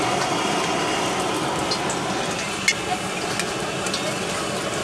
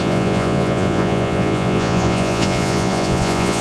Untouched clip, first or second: first